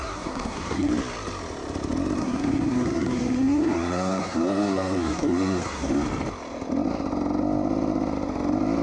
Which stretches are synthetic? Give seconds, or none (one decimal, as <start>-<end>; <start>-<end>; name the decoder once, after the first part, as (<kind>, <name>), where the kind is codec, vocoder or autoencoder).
0.0-0.9 (codec, SNAC); 2.2-5.9